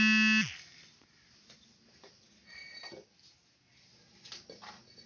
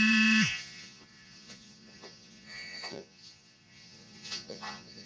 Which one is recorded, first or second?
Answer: first